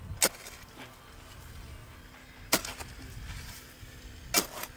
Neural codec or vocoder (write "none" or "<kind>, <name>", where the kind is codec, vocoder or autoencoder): none